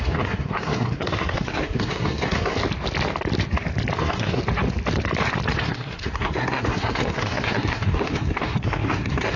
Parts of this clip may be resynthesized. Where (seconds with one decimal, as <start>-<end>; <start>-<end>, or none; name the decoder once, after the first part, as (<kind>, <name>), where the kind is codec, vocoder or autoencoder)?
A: 0.0-2.6 (codec, SNAC); 4.0-4.4; 5.6-9.4